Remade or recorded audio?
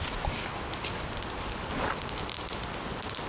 recorded